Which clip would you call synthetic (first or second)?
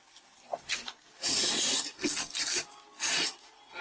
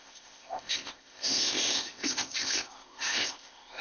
second